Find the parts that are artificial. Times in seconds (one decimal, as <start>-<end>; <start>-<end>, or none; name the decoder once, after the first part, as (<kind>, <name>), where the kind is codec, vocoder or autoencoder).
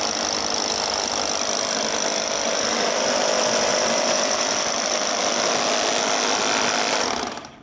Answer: none